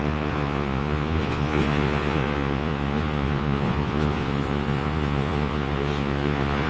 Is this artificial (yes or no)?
yes